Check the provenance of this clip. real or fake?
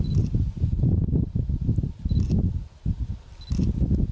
real